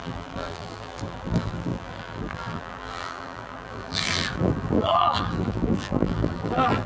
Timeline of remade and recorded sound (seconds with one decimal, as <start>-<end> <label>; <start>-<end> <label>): 0.0-6.9 remade